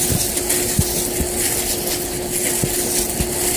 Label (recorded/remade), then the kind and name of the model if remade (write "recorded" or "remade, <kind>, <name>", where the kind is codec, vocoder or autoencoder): recorded